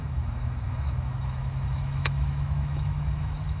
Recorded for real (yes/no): no